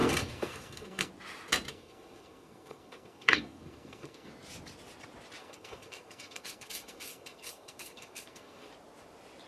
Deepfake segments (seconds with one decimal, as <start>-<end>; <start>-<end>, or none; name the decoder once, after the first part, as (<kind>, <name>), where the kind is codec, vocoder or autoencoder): 0.0-1.1 (codec, SNAC); 1.7-4.3; 5.4-8.7